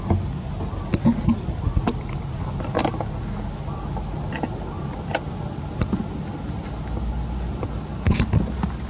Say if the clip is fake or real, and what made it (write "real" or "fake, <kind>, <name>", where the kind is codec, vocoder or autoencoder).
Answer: real